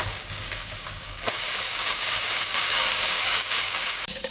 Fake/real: fake